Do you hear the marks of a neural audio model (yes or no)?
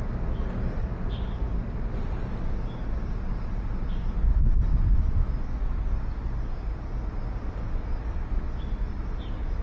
no